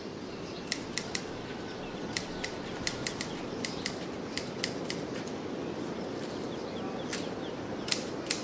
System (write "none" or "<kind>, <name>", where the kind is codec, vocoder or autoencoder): none